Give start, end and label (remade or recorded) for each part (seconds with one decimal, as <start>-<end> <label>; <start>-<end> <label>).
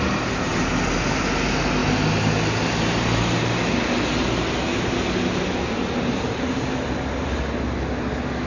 0.0-8.5 recorded